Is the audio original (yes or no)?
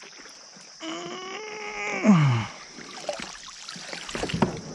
yes